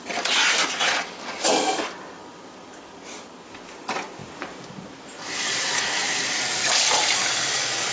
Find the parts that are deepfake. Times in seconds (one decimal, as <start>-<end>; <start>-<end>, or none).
none